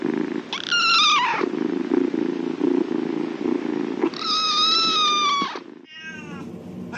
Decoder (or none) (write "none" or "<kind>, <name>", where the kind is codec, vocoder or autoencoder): none